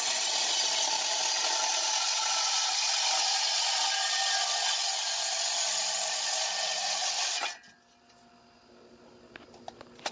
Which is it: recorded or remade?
recorded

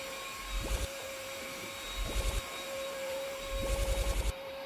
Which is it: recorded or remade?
remade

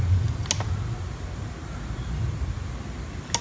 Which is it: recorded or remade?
recorded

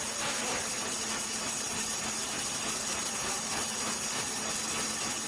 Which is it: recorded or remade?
recorded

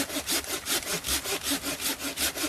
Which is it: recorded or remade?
recorded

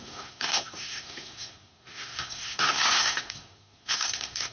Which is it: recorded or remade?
remade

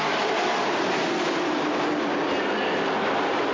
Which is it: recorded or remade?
recorded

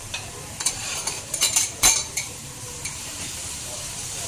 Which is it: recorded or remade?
remade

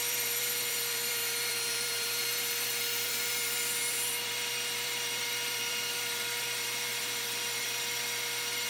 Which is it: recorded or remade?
remade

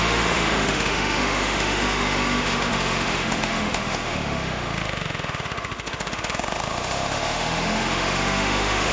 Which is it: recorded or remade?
remade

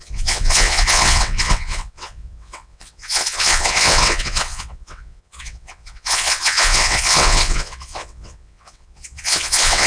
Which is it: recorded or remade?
remade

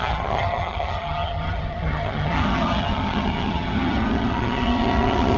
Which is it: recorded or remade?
remade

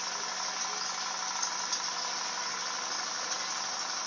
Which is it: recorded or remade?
recorded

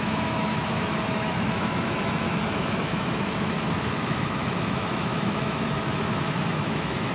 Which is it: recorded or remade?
remade